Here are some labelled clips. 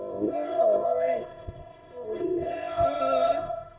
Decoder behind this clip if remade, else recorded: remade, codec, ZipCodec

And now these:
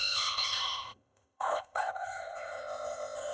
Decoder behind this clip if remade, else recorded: remade, codec, ZipCodec